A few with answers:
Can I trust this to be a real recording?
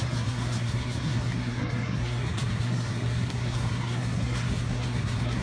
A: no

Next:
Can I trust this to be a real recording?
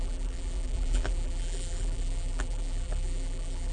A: no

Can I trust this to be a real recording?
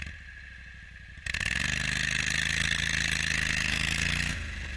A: yes